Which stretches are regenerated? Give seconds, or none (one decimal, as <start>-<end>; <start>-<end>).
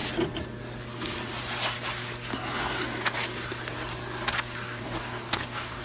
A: 4.8-5.8